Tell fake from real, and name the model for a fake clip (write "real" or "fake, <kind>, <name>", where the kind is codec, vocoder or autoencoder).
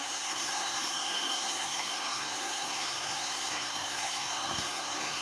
fake, codec, SNAC